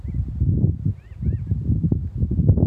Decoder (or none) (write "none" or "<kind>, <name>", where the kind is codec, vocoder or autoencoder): none